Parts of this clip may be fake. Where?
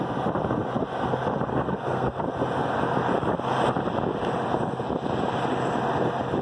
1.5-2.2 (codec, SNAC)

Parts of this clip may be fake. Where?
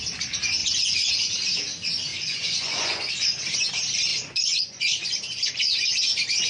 0.6-1.1 (vocoder, Vocos); 2.1-3.1; 4.1-5.9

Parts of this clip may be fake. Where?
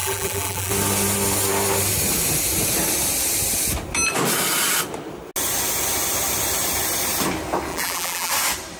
0.0-0.7 (vocoder, BigVGAN v2); 7.7-8.3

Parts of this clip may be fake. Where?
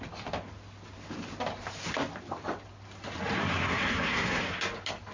3.4-4.5 (codec, SNAC)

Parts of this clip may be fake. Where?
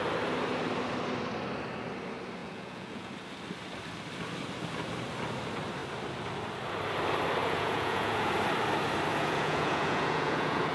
2.4-3.1 (vocoder, Vocos); 7.4-8.3; 9.1-10.7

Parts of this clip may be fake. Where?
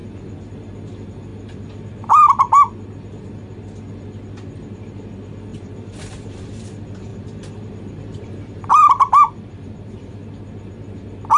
5.5-6.6 (vocoder, BigVGAN v2); 7.1-10.1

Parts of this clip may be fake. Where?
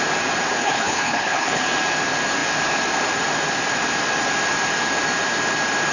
0.6-1.6 (codec, HILCodec)